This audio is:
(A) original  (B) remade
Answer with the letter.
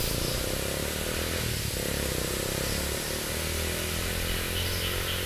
A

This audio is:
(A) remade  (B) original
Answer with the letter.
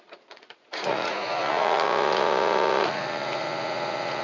A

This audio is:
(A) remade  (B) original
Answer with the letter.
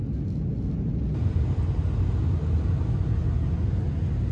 B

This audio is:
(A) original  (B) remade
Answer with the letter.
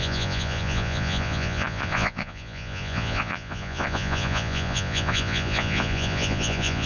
B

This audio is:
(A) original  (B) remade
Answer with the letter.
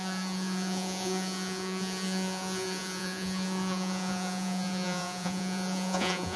B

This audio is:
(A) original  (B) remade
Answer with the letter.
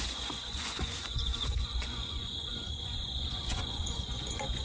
B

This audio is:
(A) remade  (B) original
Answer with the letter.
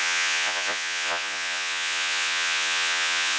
A